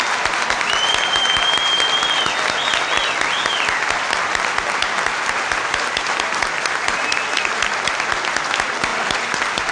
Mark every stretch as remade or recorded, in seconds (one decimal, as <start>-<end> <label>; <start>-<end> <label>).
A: 0.0-9.7 recorded